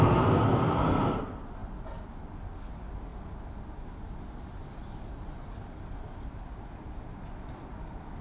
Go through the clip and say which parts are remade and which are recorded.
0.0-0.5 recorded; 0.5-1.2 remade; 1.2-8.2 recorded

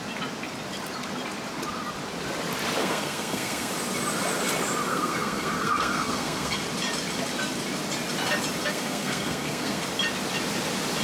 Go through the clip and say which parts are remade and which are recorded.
0.0-2.8 recorded; 2.8-3.7 remade; 3.7-4.9 recorded; 4.9-6.6 remade; 6.6-8.6 recorded; 8.6-9.8 remade; 9.8-11.0 recorded